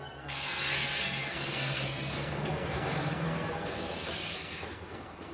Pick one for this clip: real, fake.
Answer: fake